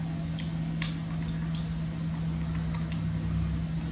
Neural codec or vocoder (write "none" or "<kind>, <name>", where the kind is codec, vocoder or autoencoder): none